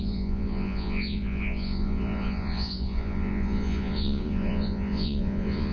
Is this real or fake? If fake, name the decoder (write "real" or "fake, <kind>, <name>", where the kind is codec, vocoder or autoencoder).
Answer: fake, vocoder, Vocos